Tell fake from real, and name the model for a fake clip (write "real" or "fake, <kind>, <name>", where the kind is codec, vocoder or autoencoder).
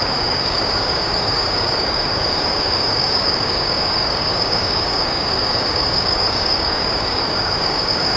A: fake, codec, DAC